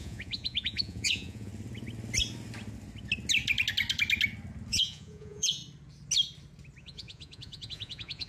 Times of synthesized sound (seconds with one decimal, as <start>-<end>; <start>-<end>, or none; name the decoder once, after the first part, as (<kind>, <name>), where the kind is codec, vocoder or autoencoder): 0.0-1.5 (vocoder, Vocos); 4.7-5.6; 6.8-8.3